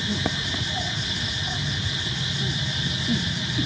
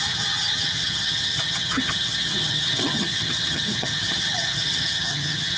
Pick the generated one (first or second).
second